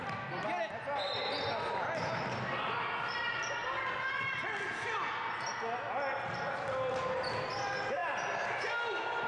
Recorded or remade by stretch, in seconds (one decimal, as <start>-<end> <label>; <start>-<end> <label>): 0.0-9.3 recorded